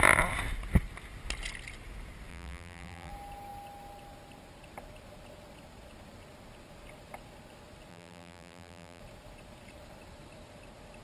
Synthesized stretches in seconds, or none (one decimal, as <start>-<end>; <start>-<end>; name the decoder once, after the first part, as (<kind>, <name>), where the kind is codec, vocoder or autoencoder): 2.3-3.1 (vocoder, BigVGAN v2); 7.9-9.0